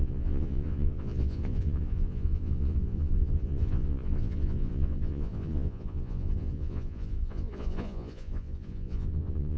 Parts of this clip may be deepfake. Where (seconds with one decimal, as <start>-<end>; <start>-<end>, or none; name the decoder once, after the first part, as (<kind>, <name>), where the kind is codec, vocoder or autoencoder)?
0.0-9.6 (vocoder, Vocos)